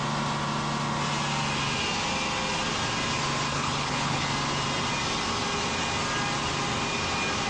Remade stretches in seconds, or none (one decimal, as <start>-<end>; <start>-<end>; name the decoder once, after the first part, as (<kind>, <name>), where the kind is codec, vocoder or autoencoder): 3.5-4.3 (codec, HILCodec)